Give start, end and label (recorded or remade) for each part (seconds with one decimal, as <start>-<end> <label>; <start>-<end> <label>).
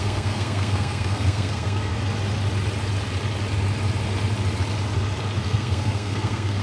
0.0-1.9 remade; 1.9-5.4 recorded; 5.4-6.6 remade